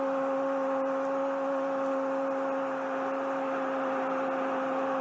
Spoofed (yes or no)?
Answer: no